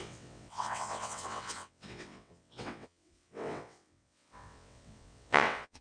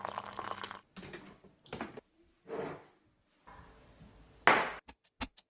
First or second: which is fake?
first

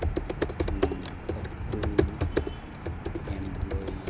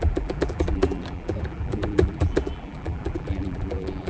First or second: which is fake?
second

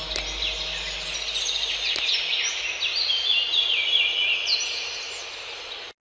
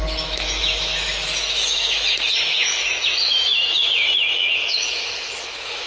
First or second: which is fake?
second